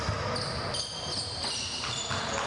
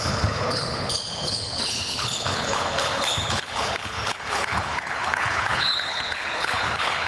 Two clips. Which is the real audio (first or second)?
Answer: first